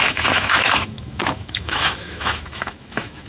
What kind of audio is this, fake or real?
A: fake